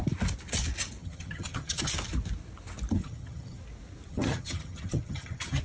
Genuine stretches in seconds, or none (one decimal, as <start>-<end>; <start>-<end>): 0.0-1.0; 1.9-3.0; 3.6-4.1